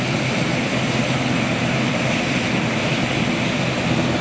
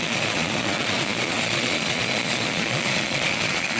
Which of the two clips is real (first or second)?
first